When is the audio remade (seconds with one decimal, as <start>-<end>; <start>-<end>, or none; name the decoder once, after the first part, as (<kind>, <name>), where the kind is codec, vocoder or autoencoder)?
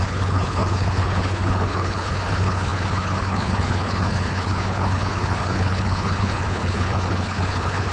0.0-7.9 (codec, HILCodec)